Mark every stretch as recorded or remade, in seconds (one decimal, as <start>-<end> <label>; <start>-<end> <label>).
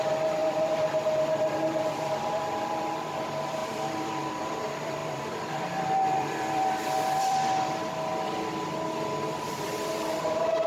0.0-8.1 remade; 8.1-9.5 recorded; 9.5-10.7 remade